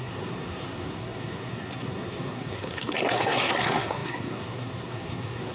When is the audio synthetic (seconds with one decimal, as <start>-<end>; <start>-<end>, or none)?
0.0-5.5